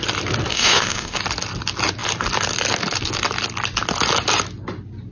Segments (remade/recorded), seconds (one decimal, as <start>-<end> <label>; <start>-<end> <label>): 0.0-0.5 recorded; 0.5-1.2 remade; 1.2-5.1 recorded